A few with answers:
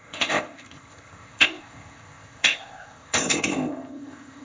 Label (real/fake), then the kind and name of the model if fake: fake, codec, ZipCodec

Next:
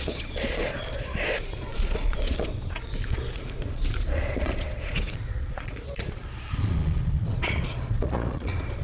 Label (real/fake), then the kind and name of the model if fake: fake, vocoder, Vocos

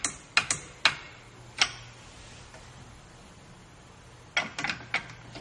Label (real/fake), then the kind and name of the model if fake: real